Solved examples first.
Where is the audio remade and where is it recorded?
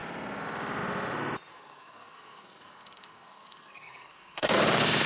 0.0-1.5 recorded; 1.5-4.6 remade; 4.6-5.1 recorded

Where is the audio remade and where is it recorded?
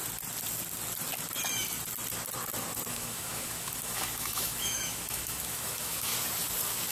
0.0-2.9 recorded; 2.9-6.1 remade; 6.1-6.9 recorded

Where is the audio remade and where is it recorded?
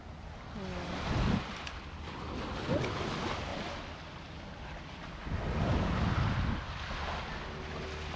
0.0-8.2 recorded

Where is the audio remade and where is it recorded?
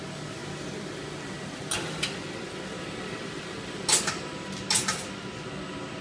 0.0-6.0 recorded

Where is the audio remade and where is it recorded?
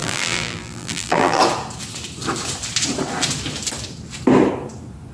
0.0-1.4 remade; 1.4-5.1 recorded